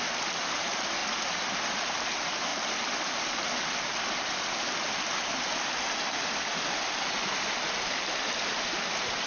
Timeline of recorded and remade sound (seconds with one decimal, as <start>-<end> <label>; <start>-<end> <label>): 0.0-9.3 recorded